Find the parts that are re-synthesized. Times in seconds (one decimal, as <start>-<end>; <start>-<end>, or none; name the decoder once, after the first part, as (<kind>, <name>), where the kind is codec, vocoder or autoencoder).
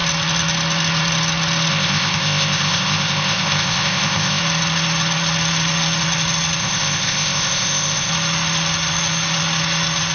1.7-4.4 (codec, ZipCodec); 6.6-8.1